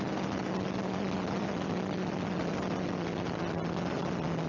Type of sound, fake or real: real